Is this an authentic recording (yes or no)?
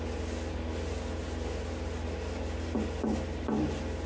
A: yes